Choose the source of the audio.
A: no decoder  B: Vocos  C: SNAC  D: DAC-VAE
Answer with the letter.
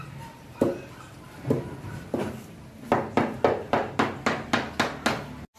A